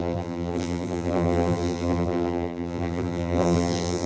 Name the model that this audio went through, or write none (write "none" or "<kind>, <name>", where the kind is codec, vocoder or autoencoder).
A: vocoder, BigVGAN v2